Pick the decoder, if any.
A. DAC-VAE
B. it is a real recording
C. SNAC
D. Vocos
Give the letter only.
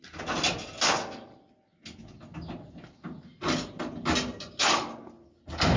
B